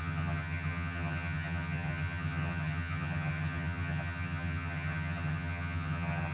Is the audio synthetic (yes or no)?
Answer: yes